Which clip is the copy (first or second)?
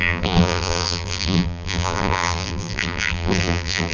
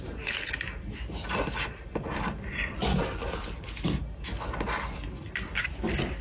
first